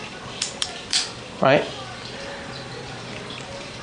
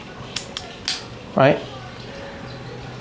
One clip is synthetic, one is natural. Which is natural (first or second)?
second